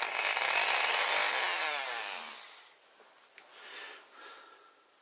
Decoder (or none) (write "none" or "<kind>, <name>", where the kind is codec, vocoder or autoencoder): none